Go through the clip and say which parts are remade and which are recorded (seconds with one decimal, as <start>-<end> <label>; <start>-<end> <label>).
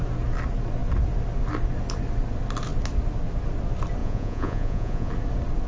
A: 0.0-4.0 recorded; 4.0-5.1 remade; 5.1-5.7 recorded